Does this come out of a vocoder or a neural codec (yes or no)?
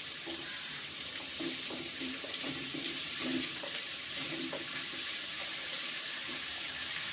yes